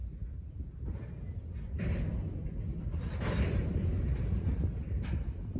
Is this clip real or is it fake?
real